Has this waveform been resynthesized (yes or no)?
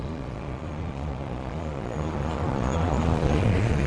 yes